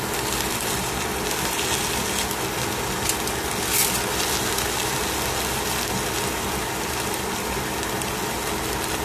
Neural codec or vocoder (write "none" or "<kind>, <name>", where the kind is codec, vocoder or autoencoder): none